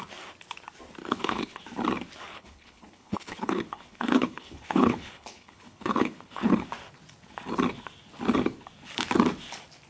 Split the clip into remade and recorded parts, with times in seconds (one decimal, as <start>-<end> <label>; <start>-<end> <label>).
0.0-1.0 recorded; 1.0-1.6 remade; 1.6-2.3 recorded; 2.3-6.6 remade; 6.6-9.9 recorded

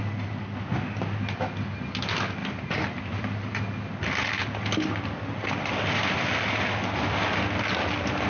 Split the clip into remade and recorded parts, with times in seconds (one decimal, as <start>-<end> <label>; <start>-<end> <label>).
0.0-2.4 recorded; 2.4-3.6 remade; 3.6-8.3 recorded

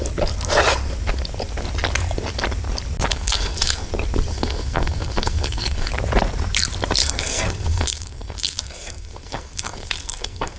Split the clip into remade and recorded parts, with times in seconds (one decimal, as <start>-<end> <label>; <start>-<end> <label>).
0.0-3.1 recorded; 3.1-3.9 remade; 3.9-4.3 recorded; 4.3-5.9 remade; 5.9-7.0 recorded; 7.0-10.6 remade

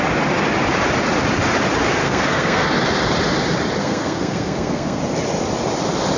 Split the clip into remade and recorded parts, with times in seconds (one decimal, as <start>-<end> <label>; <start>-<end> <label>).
0.0-2.0 recorded; 2.0-2.7 remade; 2.7-3.8 recorded; 3.8-5.0 remade; 5.0-6.2 recorded

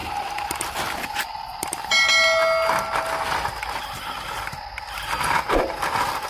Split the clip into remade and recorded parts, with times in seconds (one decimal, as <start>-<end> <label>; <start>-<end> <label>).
0.0-6.3 recorded